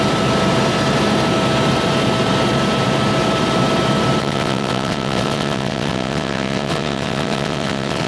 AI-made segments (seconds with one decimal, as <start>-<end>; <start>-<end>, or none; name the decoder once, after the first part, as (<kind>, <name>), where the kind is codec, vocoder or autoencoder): 4.2-8.1 (vocoder, WaveNeXt)